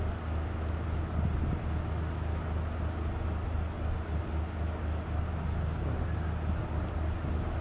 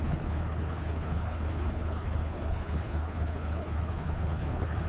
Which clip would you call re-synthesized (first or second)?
second